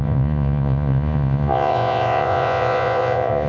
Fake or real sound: fake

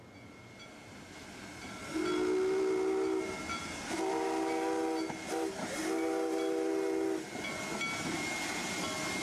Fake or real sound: real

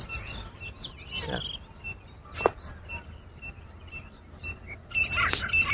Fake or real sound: real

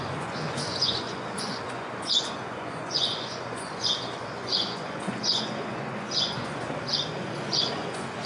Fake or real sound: fake